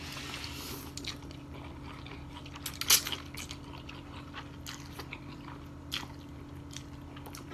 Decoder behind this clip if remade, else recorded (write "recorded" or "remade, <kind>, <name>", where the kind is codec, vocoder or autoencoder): recorded